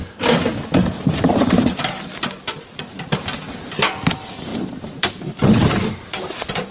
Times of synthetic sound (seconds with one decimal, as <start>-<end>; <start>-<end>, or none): 2.8-6.7